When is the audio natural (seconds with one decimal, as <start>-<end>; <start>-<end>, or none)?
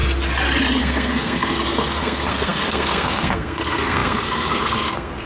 0.0-0.8